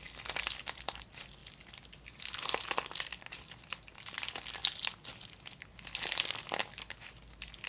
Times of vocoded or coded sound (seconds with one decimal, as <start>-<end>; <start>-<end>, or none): none